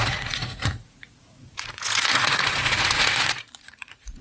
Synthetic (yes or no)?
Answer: yes